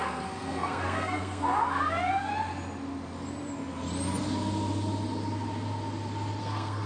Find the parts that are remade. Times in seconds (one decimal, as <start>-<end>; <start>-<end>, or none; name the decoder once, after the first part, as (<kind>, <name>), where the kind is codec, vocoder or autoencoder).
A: 0.0-2.3 (codec, SNAC); 6.4-6.9